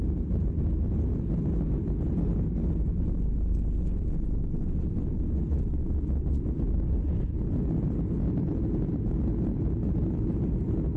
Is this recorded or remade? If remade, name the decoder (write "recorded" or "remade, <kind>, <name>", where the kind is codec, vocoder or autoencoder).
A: recorded